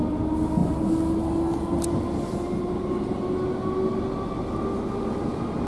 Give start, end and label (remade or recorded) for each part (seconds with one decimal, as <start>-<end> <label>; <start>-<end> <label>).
0.0-5.7 recorded

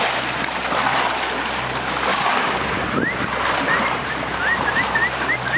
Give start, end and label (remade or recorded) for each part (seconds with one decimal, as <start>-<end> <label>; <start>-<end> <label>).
0.0-2.1 recorded; 2.1-2.7 remade; 2.7-5.6 recorded

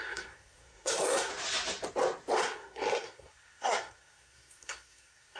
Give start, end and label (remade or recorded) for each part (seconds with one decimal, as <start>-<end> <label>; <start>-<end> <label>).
0.0-1.3 remade; 1.3-2.4 recorded; 2.4-5.4 remade

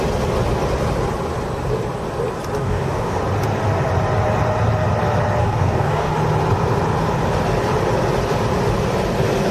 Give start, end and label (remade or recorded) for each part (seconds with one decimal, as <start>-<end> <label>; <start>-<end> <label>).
0.0-2.6 recorded; 2.6-3.2 remade; 3.2-5.4 recorded; 5.4-6.1 remade; 6.1-9.5 recorded